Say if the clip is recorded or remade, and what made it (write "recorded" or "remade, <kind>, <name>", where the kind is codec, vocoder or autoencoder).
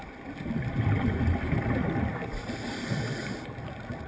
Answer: recorded